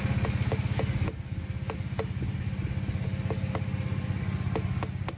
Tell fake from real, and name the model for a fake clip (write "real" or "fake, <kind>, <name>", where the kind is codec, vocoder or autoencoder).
real